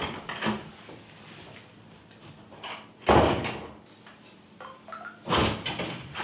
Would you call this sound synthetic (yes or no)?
no